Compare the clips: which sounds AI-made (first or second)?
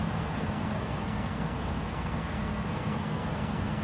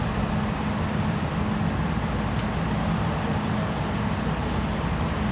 first